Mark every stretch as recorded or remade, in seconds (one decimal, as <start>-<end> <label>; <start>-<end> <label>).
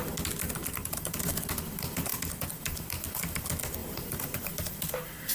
0.0-0.8 recorded; 0.8-1.3 remade; 1.3-3.8 recorded; 3.8-4.8 remade; 4.8-5.3 recorded